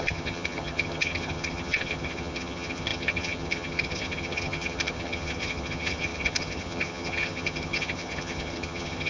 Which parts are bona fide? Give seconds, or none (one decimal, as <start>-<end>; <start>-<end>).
none